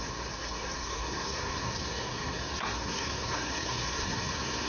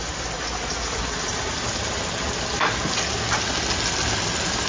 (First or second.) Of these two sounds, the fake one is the first